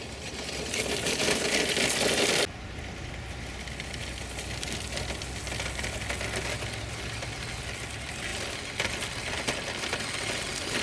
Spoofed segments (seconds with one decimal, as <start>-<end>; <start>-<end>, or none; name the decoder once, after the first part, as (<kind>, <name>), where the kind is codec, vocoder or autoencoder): none